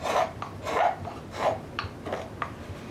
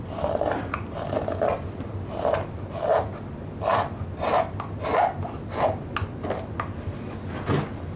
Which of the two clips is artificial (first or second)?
first